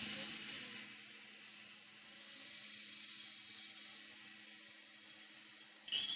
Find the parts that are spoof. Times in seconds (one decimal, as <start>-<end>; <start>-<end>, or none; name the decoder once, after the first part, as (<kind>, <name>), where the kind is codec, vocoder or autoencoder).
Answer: 0.0-0.6 (vocoder, BigVGAN v2)